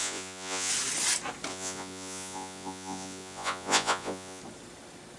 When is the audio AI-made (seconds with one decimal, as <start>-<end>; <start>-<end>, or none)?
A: 0.0-0.7; 1.5-4.4